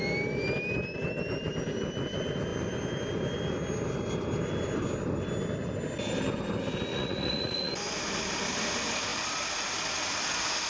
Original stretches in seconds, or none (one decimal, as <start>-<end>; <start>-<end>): 0.0-6.9; 7.7-10.7